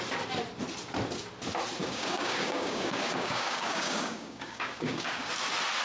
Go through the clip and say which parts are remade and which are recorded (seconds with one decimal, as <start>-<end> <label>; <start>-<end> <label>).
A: 0.0-1.8 recorded; 1.8-5.3 remade; 5.3-5.8 recorded